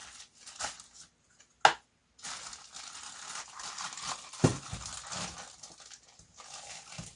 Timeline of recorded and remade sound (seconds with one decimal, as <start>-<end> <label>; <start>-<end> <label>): 0.0-7.2 recorded